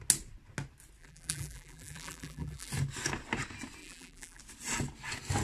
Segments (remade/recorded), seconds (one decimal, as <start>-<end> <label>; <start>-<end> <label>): 0.0-1.0 recorded; 1.0-2.7 remade; 2.7-3.8 recorded; 3.8-4.4 remade; 4.4-5.4 recorded